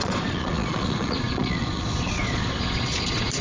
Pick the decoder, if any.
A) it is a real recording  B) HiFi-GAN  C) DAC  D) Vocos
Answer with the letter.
D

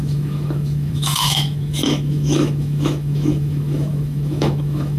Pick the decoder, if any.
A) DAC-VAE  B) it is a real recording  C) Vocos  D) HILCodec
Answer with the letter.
A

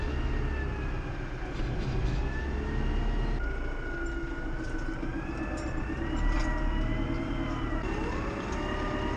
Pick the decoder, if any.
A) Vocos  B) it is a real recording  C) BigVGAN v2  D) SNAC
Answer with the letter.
B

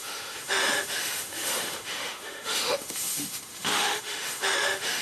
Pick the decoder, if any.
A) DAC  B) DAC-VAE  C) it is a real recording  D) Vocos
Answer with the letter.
B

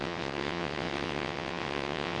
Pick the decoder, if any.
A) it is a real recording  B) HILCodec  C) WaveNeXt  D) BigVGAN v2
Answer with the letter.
C